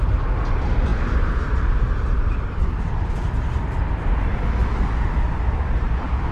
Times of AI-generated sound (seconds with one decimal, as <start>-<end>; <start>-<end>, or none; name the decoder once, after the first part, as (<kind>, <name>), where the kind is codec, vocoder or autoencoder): none

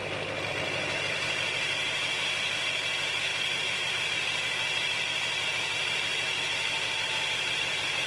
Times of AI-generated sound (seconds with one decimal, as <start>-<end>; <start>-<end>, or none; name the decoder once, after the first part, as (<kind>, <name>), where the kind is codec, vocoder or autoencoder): 3.3-3.9 (vocoder, BigVGAN v2)

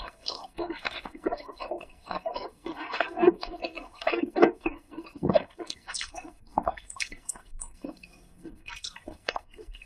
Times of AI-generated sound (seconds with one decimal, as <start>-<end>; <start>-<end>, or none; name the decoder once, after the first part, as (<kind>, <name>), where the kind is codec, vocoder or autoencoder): 0.0-9.9 (codec, SNAC)

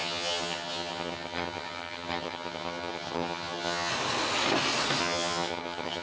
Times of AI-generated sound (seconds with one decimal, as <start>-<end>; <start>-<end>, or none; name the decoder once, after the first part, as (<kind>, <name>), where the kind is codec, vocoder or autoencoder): 0.0-3.9 (vocoder, HiFi-GAN); 5.0-6.0

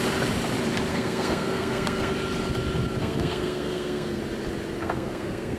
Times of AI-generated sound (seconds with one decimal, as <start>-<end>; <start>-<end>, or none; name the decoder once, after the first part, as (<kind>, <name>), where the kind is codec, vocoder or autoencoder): 0.9-2.1 (codec, SNAC); 3.0-4.2; 4.8-5.6

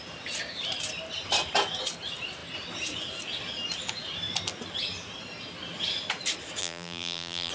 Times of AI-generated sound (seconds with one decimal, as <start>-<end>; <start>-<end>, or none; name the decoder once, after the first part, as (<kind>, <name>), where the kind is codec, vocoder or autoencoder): 6.6-7.5 (vocoder, BigVGAN v2)